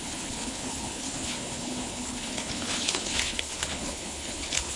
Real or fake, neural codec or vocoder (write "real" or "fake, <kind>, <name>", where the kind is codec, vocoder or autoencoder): fake, codec, HILCodec